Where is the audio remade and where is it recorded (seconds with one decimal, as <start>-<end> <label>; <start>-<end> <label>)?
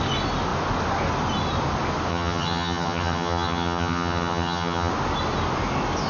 0.0-2.1 recorded; 2.1-4.9 remade; 4.9-6.1 recorded